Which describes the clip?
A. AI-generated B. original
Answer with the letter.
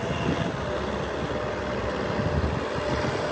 B